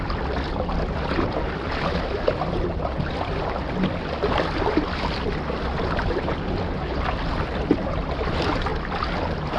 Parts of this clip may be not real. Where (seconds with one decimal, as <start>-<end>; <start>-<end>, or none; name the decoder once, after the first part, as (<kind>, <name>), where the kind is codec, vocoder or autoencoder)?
none